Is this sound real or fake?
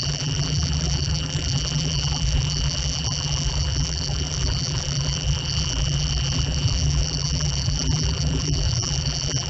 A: fake